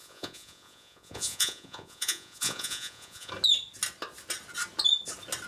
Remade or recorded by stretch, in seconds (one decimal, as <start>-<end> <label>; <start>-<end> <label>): 0.0-3.3 remade; 3.3-5.5 recorded